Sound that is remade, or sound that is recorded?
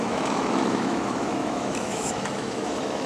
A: remade